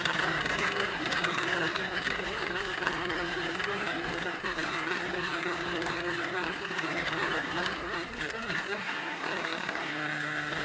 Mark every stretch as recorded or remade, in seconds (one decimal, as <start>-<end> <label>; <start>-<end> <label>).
0.0-10.6 remade